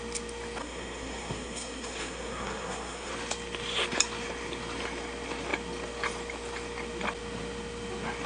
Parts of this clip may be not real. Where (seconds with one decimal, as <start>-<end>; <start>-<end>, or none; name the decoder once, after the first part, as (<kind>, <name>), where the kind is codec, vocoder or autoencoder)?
0.6-3.1 (codec, SNAC)